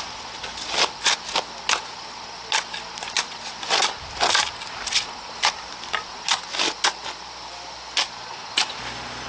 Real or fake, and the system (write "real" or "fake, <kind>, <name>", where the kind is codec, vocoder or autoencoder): real